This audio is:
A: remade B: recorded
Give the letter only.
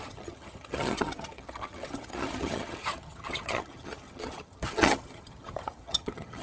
A